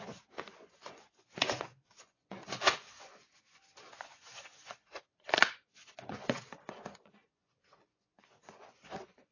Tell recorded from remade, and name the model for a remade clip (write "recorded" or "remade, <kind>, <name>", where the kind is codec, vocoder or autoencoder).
remade, vocoder, Vocos